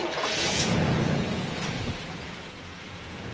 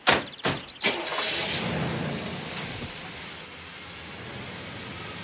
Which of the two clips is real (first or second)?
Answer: second